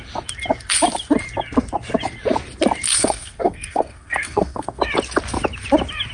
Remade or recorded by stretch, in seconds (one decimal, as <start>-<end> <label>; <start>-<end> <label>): 0.0-2.9 recorded; 2.9-4.8 remade; 4.8-6.1 recorded